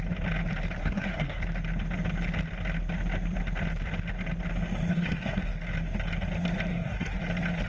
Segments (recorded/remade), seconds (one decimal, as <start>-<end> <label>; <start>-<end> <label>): 0.0-0.8 recorded; 0.8-1.4 remade; 1.4-4.9 recorded; 4.9-5.5 remade; 5.5-6.7 recorded; 6.7-7.2 remade; 7.2-7.7 recorded